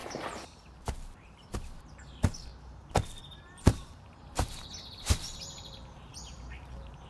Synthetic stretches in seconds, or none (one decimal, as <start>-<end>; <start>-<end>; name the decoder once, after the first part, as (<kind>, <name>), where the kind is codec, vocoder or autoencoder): 0.7-2.5 (vocoder, BigVGAN v2); 3.4-7.1